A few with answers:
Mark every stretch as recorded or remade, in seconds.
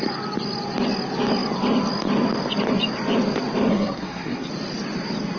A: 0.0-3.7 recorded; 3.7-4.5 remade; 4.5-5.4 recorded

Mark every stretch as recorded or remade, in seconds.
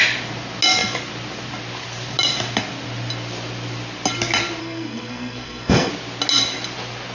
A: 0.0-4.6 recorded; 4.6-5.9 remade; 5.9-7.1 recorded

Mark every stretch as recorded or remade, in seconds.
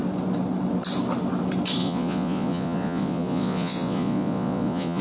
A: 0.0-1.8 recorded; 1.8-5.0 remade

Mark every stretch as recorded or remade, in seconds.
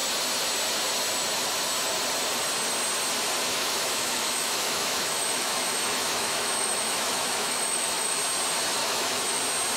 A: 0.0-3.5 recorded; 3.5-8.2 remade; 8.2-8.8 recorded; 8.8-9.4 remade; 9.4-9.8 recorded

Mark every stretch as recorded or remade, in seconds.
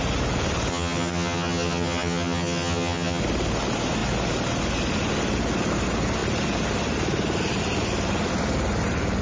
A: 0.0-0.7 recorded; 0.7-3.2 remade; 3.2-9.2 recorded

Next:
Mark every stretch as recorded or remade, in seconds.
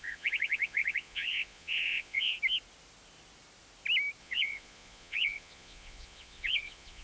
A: 0.0-2.3 remade; 2.3-4.2 recorded; 4.2-7.0 remade